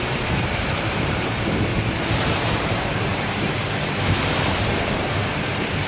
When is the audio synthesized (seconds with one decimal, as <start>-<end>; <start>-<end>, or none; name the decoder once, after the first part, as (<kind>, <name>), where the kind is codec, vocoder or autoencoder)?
0.0-1.7 (vocoder, BigVGAN v2); 2.3-5.9